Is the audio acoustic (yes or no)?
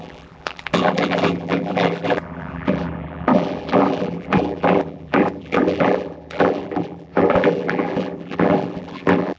no